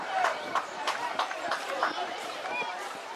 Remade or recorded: remade